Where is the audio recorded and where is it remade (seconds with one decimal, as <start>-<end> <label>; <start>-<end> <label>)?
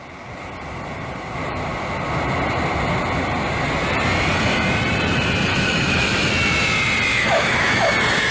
0.0-5.5 recorded; 5.5-6.3 remade; 6.3-7.1 recorded; 7.1-7.9 remade; 7.9-8.3 recorded